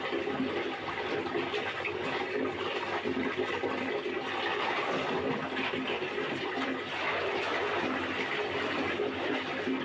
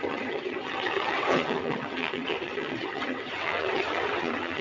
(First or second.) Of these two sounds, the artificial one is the second